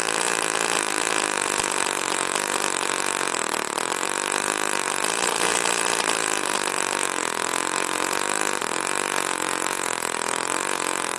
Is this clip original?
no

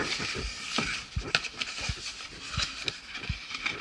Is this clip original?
yes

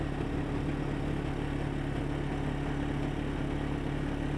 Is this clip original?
yes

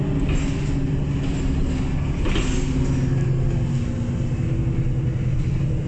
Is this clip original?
yes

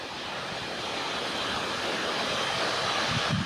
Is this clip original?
yes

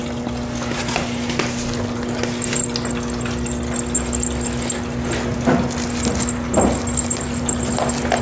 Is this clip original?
yes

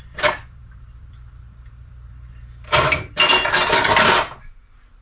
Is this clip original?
no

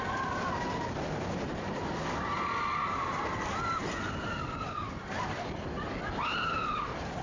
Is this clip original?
yes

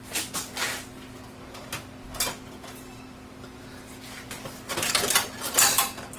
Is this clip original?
yes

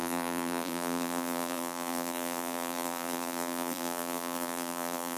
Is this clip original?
no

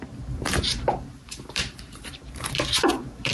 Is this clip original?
no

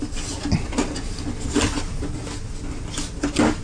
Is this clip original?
yes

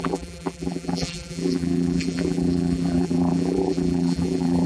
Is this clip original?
no